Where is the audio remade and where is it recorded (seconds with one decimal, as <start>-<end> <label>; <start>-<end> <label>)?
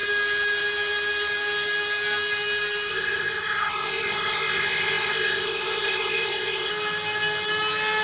0.0-2.9 recorded; 2.9-6.7 remade; 6.7-8.0 recorded